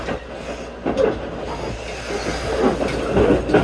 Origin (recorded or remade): recorded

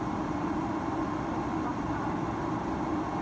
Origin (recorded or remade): recorded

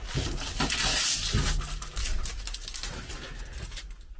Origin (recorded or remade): recorded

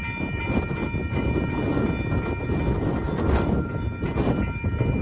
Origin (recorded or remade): recorded